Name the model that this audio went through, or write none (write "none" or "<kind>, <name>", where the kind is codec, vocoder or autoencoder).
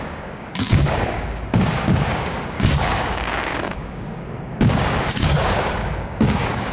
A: codec, DAC